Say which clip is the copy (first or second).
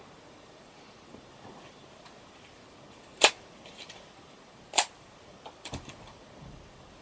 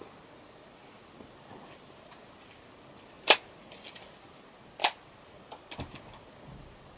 first